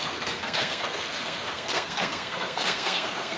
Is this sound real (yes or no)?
no